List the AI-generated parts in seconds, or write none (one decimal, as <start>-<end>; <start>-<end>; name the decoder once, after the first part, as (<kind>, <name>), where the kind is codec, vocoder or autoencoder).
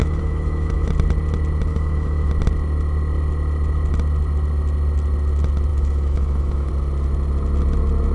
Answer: 0.0-0.9 (autoencoder, DAC-VAE); 1.7-2.3; 5.7-6.7